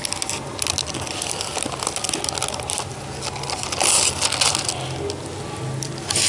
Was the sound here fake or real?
real